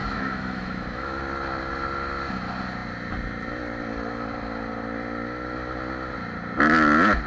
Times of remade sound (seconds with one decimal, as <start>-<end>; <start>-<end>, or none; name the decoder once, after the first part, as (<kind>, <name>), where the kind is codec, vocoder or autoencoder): 0.0-1.2 (autoencoder, DAC-VAE)